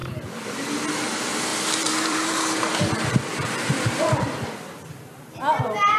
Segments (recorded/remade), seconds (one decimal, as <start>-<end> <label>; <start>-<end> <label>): 0.0-1.5 recorded; 1.5-4.8 remade; 4.8-6.0 recorded

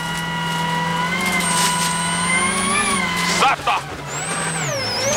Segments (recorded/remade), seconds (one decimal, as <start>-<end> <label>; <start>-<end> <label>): 0.0-5.2 recorded

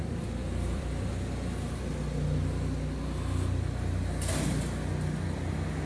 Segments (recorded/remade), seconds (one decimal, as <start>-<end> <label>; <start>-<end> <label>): 0.0-1.1 remade; 1.1-5.9 recorded

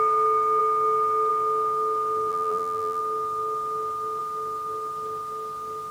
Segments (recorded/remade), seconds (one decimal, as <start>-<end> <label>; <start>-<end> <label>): 0.0-2.3 recorded; 2.3-3.0 remade; 3.0-5.9 recorded

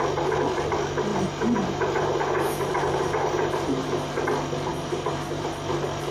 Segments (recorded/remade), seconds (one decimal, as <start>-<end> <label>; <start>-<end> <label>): 0.0-1.1 recorded; 1.1-4.2 remade; 4.2-4.7 recorded; 4.7-5.5 remade; 5.5-6.1 recorded

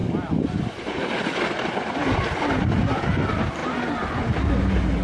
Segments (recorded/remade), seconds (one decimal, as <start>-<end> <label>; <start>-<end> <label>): 0.0-5.0 recorded

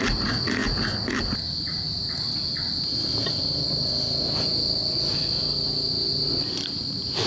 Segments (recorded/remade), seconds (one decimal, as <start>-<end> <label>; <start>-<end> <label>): 0.0-0.6 recorded; 0.6-2.1 remade; 2.1-7.3 recorded

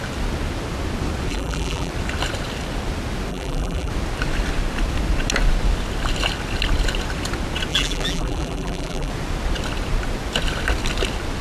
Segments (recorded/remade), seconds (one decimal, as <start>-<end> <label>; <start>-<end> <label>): 0.0-1.3 recorded; 1.3-1.9 remade; 1.9-3.3 recorded; 3.3-3.9 remade; 3.9-7.7 recorded; 7.7-9.1 remade; 9.1-11.4 recorded